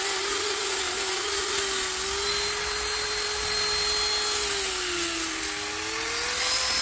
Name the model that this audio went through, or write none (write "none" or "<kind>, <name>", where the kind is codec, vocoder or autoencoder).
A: none